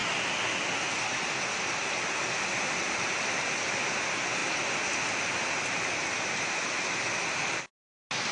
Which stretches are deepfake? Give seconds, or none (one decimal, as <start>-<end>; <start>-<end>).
none